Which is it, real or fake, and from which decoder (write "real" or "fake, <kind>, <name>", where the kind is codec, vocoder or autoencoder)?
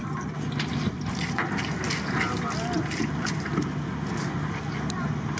real